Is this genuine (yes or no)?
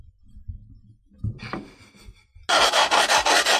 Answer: yes